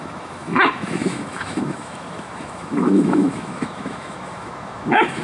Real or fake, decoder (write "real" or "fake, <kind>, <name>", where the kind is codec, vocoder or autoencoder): fake, autoencoder, DAC-VAE